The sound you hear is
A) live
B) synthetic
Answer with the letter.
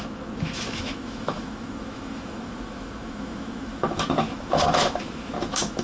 B